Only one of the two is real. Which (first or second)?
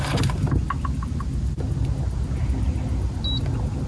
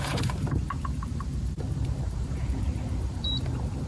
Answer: first